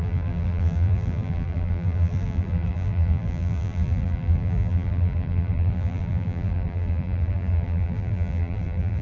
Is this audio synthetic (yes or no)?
yes